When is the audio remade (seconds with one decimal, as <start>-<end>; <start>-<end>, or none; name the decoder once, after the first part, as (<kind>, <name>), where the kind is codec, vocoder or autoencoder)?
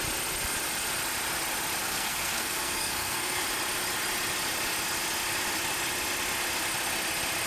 1.8-3.4 (codec, SNAC)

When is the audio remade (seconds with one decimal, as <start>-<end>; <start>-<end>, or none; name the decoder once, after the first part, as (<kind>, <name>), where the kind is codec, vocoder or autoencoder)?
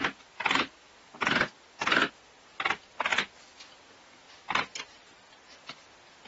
none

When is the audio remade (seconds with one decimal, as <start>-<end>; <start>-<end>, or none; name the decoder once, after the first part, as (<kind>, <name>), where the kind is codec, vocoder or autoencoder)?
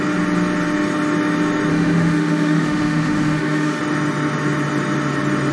1.7-3.8 (autoencoder, DAC-VAE)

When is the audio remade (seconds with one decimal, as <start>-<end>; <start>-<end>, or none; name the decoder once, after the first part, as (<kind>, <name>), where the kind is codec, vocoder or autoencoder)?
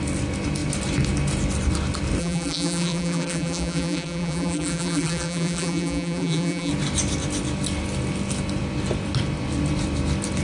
2.2-6.7 (vocoder, BigVGAN v2)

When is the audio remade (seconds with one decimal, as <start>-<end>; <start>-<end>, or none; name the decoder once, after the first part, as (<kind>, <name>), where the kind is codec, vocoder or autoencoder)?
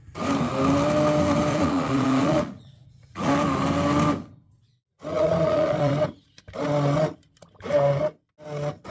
1.5-3.3 (vocoder, Vocos); 5.1-5.9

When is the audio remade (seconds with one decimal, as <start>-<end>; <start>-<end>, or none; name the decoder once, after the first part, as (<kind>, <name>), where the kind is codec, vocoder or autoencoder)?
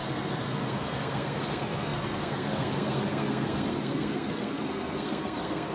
0.0-5.7 (codec, SNAC)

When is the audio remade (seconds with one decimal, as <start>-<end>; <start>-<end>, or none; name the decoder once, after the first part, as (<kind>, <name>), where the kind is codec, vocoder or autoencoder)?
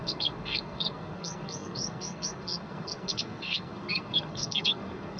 0.0-5.2 (codec, SNAC)